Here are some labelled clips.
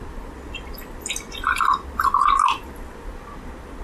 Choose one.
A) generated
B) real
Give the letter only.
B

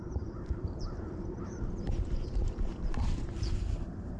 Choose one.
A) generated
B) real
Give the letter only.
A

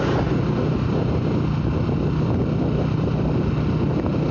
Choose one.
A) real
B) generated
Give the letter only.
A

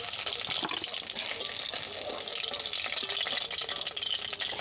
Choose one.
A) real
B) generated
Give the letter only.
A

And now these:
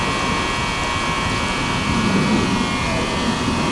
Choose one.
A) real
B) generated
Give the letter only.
A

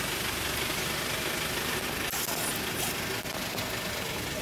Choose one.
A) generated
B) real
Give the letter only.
B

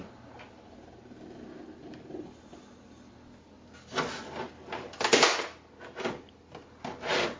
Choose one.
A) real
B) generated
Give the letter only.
A